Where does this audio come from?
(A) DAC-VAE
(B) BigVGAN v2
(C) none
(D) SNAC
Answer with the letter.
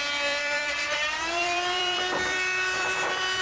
B